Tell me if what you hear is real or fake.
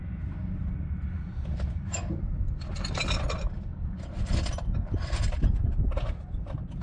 real